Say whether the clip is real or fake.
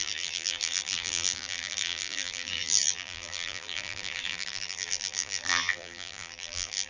fake